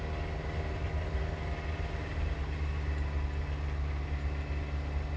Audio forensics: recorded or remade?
recorded